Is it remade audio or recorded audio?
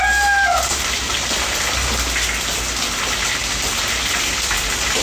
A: recorded